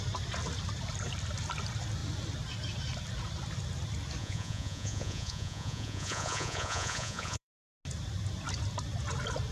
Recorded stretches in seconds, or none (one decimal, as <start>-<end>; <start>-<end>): 0.0-4.2; 7.6-9.5